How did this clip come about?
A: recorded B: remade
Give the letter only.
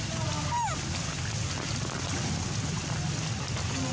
A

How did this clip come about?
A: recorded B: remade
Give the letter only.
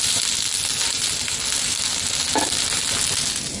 A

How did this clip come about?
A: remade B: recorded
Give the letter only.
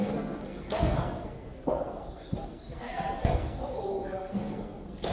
A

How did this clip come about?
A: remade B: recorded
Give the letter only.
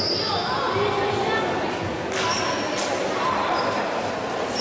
B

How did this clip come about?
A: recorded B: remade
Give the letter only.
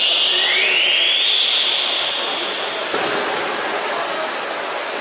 A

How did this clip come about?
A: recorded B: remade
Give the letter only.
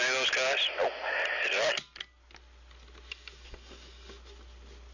A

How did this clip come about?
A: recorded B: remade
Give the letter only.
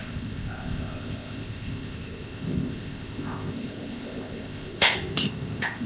B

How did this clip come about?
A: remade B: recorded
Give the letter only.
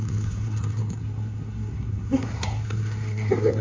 A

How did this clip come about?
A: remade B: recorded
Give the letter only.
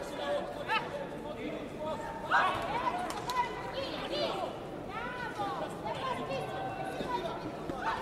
B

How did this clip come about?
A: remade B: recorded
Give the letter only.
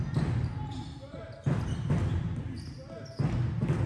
B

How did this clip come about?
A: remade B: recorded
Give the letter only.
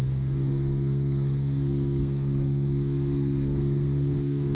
A